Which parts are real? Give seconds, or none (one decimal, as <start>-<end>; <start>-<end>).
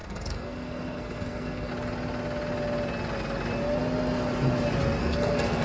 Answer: 1.7-5.0